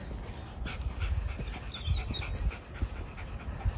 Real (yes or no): yes